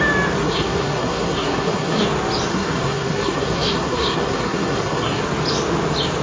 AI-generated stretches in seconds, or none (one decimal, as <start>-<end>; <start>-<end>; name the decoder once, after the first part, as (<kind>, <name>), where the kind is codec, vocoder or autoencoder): 0.4-2.0 (codec, SNAC); 2.5-5.2

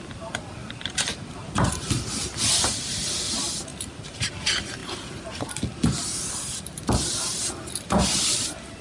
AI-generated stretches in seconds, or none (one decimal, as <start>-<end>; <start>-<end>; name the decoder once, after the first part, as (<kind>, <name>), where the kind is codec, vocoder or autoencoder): 0.6-2.0 (vocoder, BigVGAN v2); 3.7-4.3

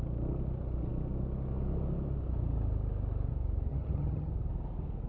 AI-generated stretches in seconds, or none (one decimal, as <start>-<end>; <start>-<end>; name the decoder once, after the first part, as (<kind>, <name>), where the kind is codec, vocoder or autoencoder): 3.7-4.3 (vocoder, HiFi-GAN)

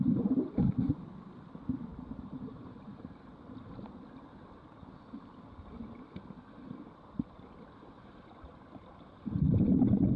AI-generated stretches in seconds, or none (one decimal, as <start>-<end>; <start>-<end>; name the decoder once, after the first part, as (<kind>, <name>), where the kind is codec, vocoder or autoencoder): 1.9-3.2 (vocoder, BigVGAN v2)

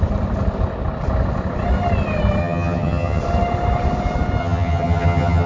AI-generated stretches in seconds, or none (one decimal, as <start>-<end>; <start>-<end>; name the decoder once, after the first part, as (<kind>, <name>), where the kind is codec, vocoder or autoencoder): 2.4-3.2 (vocoder, HiFi-GAN); 4.4-5.5

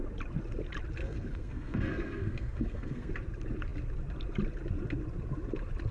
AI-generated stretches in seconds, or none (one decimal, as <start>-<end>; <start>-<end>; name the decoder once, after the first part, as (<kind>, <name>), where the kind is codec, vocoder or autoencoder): 1.0-3.1 (codec, SNAC)

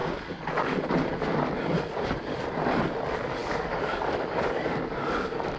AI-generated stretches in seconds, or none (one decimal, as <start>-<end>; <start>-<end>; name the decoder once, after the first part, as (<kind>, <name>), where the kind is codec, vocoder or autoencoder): 0.0-0.8 (codec, DAC); 3.4-5.6